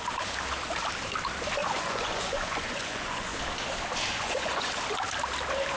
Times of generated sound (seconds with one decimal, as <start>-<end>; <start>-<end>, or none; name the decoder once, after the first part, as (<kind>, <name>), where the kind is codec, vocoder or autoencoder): 1.6-3.4 (vocoder, Vocos); 4.1-4.7